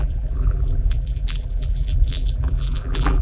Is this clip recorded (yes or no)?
no